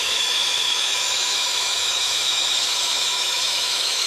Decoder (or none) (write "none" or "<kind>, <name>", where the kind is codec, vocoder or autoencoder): autoencoder, DAC-VAE